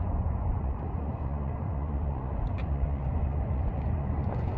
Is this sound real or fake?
fake